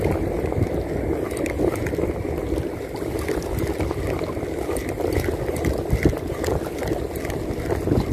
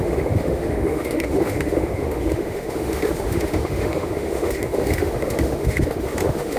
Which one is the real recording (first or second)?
first